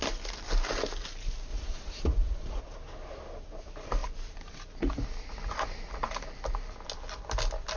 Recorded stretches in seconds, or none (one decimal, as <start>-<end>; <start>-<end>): 0.0-1.5; 2.6-7.8